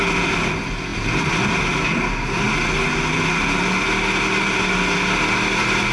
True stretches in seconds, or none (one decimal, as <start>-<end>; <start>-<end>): 0.0-5.9